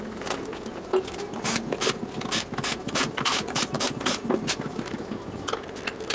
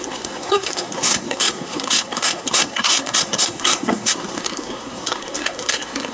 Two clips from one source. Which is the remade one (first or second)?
second